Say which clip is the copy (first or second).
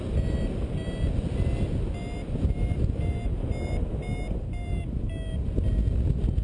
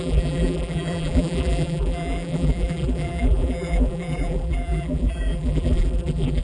second